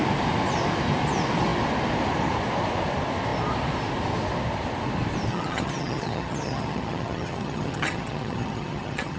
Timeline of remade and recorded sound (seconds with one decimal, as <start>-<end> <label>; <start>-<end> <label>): 0.0-5.3 recorded; 5.3-9.2 remade